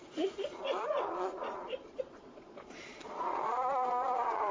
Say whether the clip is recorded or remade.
remade